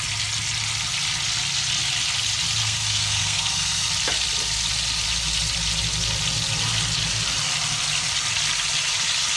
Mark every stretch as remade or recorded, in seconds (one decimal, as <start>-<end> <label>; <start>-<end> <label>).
0.0-2.6 recorded; 2.6-3.9 remade; 3.9-9.4 recorded